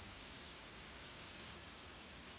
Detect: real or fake fake